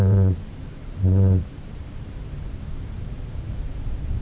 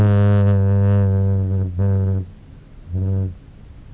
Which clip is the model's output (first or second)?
first